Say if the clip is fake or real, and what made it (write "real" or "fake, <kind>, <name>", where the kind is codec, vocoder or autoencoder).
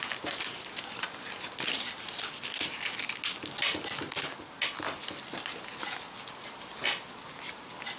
real